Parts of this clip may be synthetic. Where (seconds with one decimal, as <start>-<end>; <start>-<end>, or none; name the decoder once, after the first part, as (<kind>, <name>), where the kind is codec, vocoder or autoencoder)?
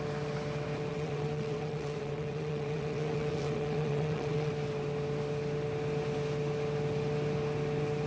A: 0.9-4.5 (vocoder, WaveNeXt)